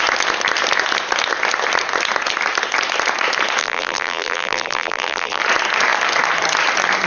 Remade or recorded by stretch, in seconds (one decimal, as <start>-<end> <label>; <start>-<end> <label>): 0.0-3.6 recorded; 3.6-5.4 remade; 5.4-7.1 recorded